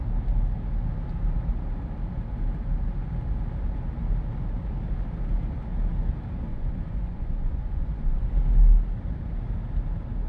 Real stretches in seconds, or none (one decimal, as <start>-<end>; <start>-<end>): 0.0-6.5; 8.3-10.3